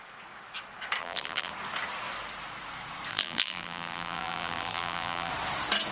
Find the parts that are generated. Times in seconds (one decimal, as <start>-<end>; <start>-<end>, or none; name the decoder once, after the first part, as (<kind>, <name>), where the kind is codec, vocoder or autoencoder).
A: 1.0-1.5 (vocoder, BigVGAN v2); 3.1-5.3

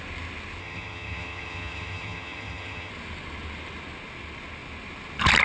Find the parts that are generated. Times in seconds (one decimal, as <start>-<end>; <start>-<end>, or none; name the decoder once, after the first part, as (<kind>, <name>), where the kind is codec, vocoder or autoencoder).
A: 0.6-2.9 (vocoder, HiFi-GAN)

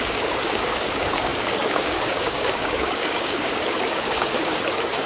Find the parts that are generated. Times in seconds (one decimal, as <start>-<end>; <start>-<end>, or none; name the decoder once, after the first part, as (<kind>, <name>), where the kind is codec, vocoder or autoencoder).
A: 0.0-5.1 (codec, DAC)

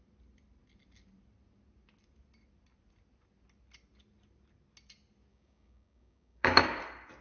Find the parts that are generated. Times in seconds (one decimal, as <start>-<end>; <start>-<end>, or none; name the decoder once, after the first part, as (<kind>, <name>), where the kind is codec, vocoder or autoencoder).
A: 5.3-6.8 (codec, DAC)

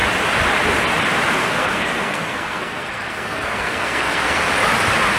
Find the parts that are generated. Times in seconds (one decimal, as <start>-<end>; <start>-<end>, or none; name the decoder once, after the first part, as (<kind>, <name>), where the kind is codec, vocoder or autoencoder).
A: 1.4-4.5 (codec, SNAC)

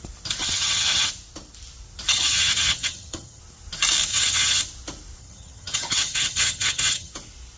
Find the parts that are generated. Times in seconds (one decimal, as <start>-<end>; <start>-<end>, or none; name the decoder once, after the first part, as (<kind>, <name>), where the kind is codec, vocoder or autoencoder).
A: 0.4-1.1 (vocoder, HiFi-GAN); 2.1-3.4; 4.1-4.6; 5.2-7.1

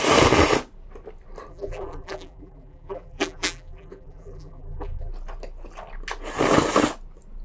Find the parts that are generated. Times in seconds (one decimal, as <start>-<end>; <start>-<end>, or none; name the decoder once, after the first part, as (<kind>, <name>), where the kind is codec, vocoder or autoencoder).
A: 1.5-5.1 (vocoder, BigVGAN v2)

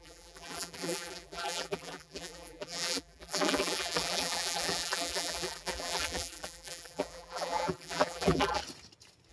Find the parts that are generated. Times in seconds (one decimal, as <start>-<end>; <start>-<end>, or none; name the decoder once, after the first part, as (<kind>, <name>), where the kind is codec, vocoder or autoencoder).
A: 0.0-8.6 (vocoder, BigVGAN v2)